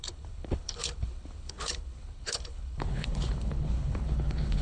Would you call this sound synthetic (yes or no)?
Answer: yes